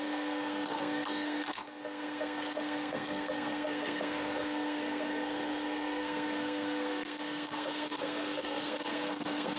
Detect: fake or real fake